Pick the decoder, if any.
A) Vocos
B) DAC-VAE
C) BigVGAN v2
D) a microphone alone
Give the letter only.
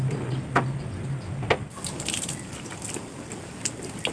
D